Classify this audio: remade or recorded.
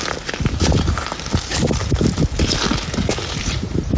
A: remade